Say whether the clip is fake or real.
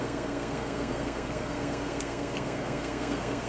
fake